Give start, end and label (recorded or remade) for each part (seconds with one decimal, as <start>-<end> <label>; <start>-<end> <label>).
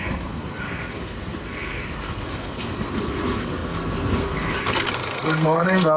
0.0-6.0 remade